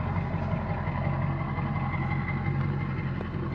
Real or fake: real